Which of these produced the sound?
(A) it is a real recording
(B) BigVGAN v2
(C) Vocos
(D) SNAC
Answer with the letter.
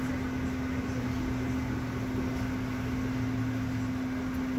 A